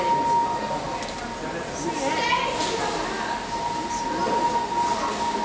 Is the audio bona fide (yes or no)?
yes